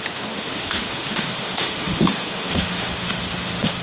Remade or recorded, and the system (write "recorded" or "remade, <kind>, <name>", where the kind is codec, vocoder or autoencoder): remade, autoencoder, DAC-VAE